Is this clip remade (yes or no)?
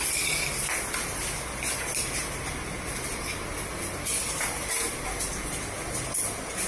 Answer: no